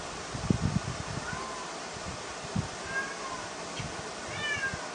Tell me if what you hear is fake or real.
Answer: real